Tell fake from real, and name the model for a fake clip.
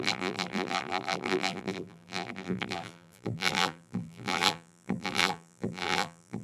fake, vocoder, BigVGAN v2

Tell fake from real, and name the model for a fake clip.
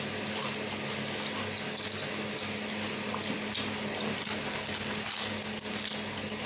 real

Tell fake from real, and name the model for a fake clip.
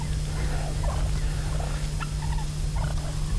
real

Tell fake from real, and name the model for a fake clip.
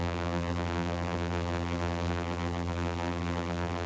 fake, vocoder, BigVGAN v2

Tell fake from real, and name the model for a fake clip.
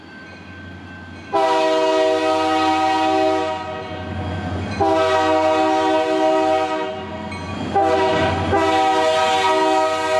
real